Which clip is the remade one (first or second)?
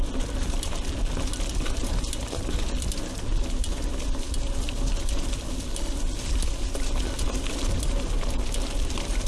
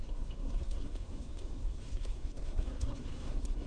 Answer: second